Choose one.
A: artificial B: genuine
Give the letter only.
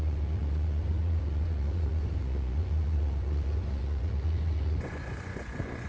A